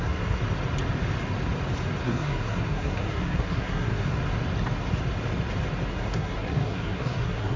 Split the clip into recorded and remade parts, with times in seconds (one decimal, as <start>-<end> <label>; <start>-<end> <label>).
0.0-0.4 remade; 0.4-2.0 recorded; 2.0-4.2 remade; 4.2-5.9 recorded; 5.9-7.6 remade